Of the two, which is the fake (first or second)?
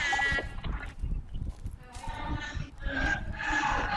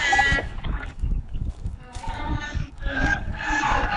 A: second